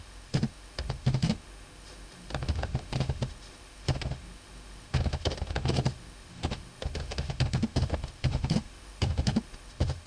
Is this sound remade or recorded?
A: remade